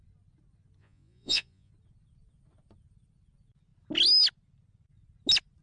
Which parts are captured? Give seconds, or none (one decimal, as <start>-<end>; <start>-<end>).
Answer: 0.0-0.8; 1.7-5.6